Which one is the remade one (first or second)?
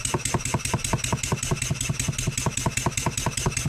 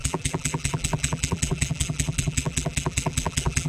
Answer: second